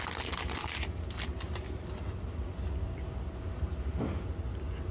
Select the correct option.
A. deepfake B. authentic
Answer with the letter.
B